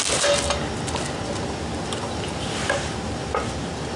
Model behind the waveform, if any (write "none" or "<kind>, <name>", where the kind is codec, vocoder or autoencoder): none